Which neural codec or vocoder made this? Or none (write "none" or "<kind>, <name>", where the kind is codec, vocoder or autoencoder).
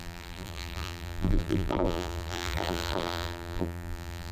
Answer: vocoder, BigVGAN v2